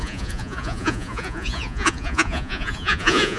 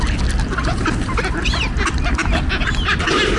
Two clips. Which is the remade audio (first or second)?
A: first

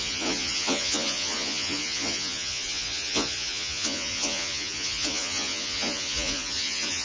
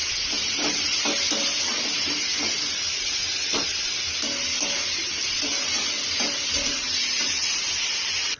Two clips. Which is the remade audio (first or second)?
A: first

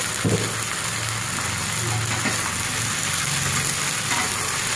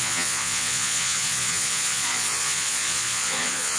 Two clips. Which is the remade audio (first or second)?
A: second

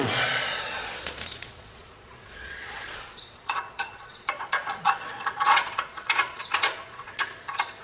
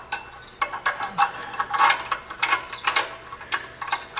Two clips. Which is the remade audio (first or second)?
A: first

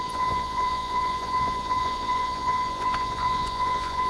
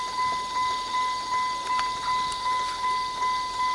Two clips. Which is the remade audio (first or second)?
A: first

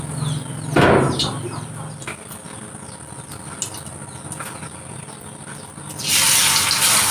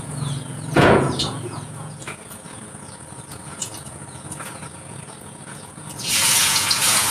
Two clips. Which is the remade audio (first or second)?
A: second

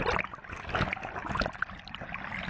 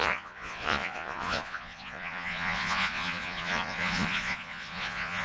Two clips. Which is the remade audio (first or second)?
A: second